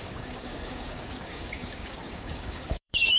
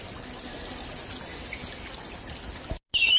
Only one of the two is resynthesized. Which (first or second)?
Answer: first